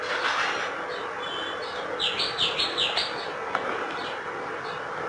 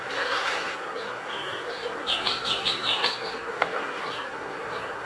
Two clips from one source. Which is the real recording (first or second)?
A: first